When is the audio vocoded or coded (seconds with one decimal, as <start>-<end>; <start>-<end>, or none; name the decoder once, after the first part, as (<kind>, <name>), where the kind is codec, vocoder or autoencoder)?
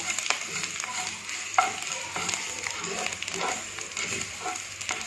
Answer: none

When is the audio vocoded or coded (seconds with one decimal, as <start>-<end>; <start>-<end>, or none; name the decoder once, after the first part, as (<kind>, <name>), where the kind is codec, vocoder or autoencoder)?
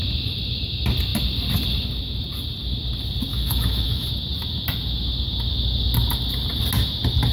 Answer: 3.3-4.1 (autoencoder, DAC-VAE)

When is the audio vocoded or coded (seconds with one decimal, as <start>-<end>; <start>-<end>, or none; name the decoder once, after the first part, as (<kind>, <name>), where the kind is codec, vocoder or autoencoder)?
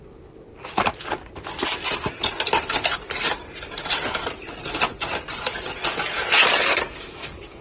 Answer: 5.8-7.6 (codec, DAC)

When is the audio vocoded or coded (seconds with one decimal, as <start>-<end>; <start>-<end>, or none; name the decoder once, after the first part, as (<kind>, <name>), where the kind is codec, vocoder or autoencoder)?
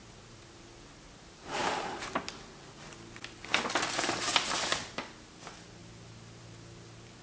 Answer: none